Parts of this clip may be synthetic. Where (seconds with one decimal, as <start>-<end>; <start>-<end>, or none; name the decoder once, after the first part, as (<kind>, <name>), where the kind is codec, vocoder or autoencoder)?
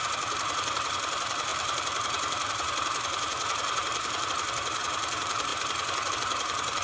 0.0-5.5 (vocoder, BigVGAN v2); 6.1-6.8